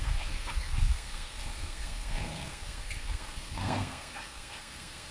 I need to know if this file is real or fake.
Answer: fake